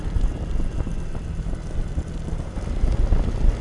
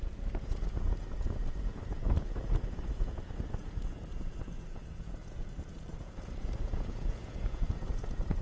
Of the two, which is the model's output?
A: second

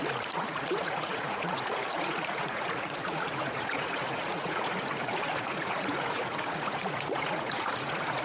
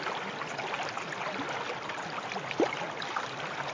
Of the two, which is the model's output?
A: first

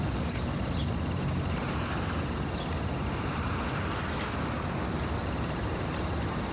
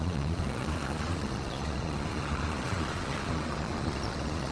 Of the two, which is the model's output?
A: second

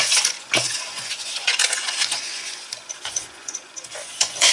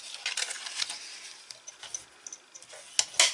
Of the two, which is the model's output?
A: first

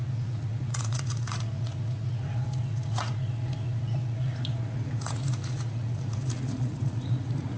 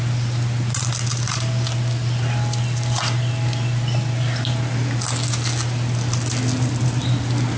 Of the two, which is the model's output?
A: first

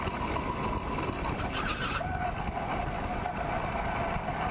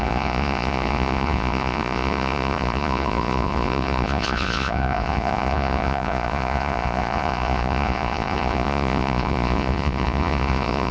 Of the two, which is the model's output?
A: second